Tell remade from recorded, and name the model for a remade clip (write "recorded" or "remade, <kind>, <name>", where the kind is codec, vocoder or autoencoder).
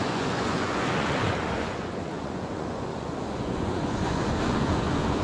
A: remade, vocoder, Vocos